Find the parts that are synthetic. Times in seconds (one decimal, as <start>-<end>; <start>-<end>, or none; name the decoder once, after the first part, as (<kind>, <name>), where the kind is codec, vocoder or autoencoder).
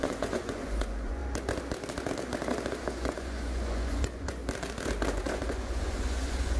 0.0-1.2 (vocoder, Vocos); 2.8-4.4; 5.1-6.6